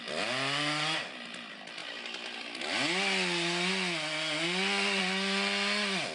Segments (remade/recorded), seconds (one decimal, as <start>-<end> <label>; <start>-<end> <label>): 0.0-6.1 recorded